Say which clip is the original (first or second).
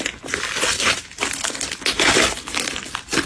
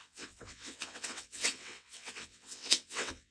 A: first